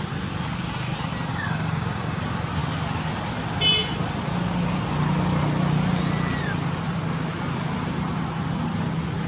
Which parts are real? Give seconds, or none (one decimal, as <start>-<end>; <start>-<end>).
0.0-1.3; 2.2-9.3